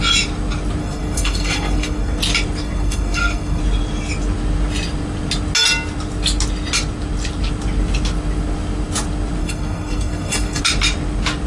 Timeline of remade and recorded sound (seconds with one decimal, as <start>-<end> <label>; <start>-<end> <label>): 0.0-0.8 recorded; 0.8-2.2 remade; 2.2-2.6 recorded; 2.6-3.6 remade; 3.6-9.4 recorded; 9.4-10.6 remade; 10.6-11.5 recorded